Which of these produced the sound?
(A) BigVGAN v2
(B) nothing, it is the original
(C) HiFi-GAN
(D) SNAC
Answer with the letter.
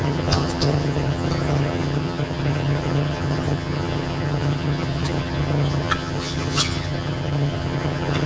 C